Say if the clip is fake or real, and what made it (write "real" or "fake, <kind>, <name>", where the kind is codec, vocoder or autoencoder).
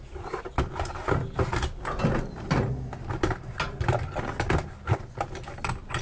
real